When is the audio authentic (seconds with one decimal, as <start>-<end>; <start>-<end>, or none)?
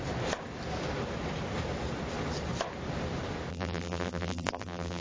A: 0.0-3.5